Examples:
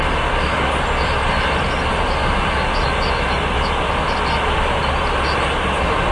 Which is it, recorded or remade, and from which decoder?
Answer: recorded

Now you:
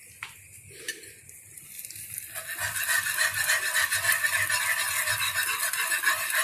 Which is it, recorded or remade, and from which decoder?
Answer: recorded